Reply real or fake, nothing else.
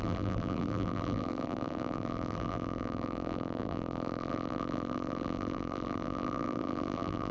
fake